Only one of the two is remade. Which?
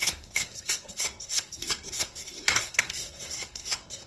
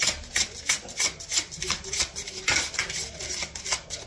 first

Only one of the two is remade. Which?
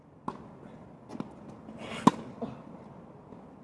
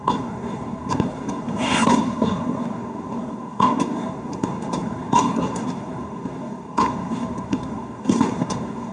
second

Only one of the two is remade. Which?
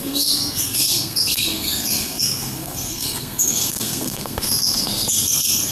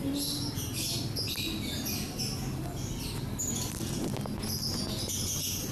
first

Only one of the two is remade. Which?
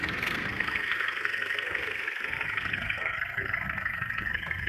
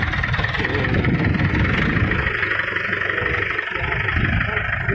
first